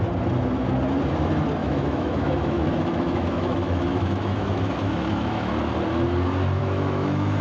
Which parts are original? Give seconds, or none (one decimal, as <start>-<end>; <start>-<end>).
0.0-1.6; 5.5-6.6